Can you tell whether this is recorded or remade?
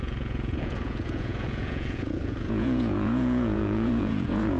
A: remade